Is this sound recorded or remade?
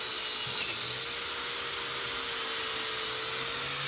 recorded